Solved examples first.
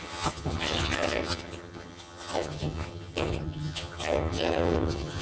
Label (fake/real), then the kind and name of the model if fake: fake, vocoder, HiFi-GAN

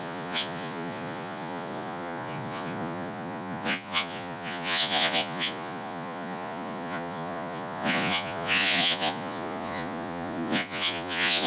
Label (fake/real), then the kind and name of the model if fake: fake, vocoder, Vocos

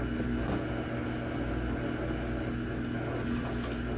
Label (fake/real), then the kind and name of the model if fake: real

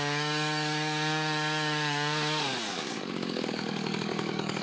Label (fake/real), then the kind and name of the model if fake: fake, codec, DAC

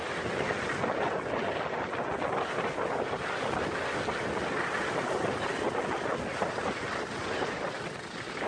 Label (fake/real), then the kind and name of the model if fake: real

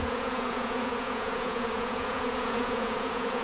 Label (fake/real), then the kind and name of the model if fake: fake, vocoder, Vocos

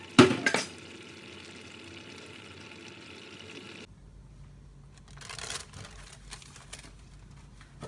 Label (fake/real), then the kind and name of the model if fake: real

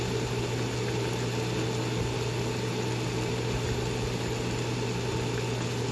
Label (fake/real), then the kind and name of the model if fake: real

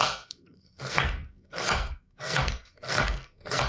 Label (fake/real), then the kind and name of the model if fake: fake, codec, SNAC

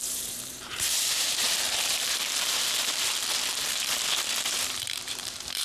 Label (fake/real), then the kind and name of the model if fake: fake, vocoder, BigVGAN v2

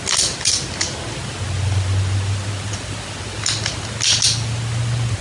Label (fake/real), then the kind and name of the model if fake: real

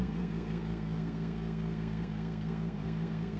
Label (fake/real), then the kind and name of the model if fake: fake, codec, SNAC